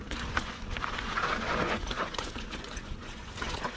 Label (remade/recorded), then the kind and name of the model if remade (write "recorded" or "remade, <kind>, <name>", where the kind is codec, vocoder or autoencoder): remade, vocoder, Vocos